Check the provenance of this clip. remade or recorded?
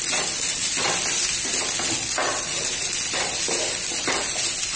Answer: recorded